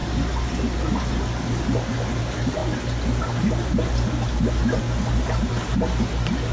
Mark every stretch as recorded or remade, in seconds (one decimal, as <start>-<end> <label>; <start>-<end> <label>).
0.0-6.5 recorded